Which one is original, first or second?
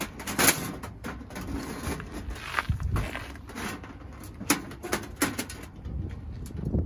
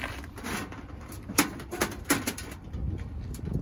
first